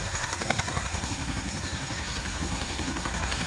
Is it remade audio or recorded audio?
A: remade